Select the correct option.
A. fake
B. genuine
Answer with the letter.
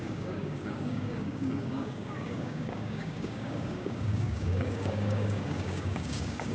A